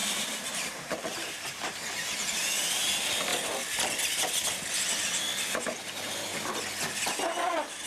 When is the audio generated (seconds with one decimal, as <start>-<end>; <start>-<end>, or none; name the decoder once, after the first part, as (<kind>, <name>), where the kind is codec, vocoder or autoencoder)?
0.0-1.7 (vocoder, BigVGAN v2)